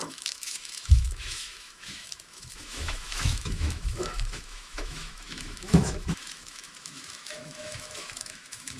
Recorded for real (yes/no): no